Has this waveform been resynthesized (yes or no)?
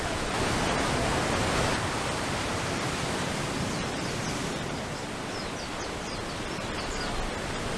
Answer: no